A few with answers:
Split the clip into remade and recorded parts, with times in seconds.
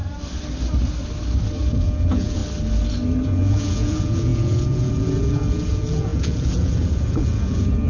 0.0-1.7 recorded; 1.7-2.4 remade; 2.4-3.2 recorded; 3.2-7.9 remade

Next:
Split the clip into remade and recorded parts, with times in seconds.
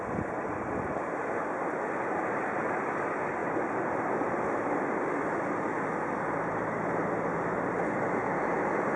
0.0-9.0 recorded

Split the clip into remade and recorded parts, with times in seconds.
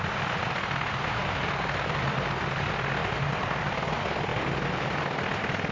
0.0-5.7 recorded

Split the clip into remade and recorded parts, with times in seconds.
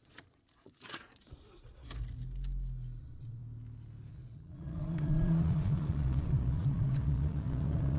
0.0-1.8 remade; 1.8-3.0 recorded; 3.0-3.4 remade; 3.4-4.1 recorded; 4.1-8.0 remade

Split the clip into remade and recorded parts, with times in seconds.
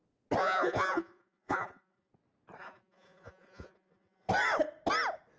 0.0-0.4 recorded; 0.4-2.1 remade; 2.1-2.6 recorded; 2.6-4.3 remade; 4.3-5.4 recorded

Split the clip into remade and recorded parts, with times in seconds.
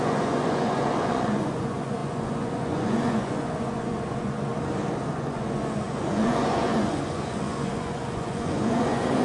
0.0-4.5 remade; 4.5-5.1 recorded; 5.1-9.2 remade